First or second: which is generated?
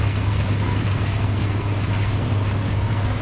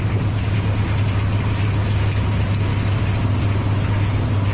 first